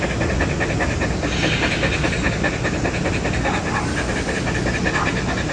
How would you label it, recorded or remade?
recorded